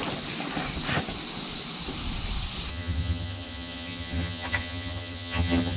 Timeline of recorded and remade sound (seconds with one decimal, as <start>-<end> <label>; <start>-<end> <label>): 0.0-2.7 recorded; 2.7-5.8 remade